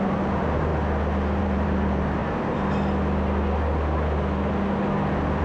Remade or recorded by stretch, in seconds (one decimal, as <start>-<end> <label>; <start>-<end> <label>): 0.0-0.7 remade; 0.7-1.4 recorded; 1.4-2.2 remade; 2.2-5.4 recorded